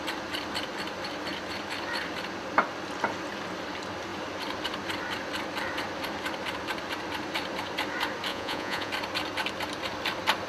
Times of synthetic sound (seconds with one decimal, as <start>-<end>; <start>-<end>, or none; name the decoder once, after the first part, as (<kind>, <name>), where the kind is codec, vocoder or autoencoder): 8.3-8.9 (vocoder, Vocos)